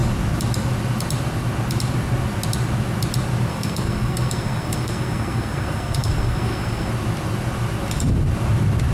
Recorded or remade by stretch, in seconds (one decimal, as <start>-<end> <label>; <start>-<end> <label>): 0.0-3.5 recorded; 3.5-6.9 remade; 6.9-8.9 recorded